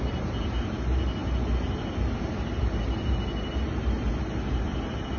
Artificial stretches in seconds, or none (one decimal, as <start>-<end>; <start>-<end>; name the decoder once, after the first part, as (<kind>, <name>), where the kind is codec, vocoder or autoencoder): none